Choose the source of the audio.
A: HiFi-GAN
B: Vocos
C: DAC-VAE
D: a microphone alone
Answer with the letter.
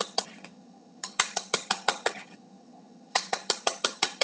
A